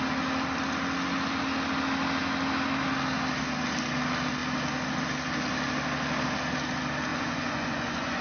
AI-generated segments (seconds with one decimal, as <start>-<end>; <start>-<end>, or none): 7.1-8.2